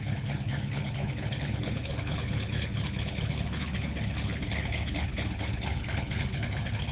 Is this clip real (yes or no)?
no